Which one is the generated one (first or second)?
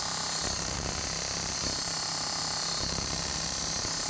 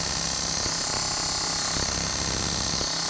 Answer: first